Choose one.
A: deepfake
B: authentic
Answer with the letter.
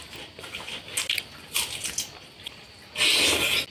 B